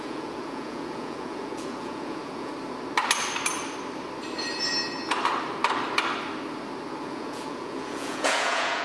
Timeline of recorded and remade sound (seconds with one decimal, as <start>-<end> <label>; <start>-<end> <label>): 0.0-2.5 remade; 2.5-7.0 recorded; 7.0-8.8 remade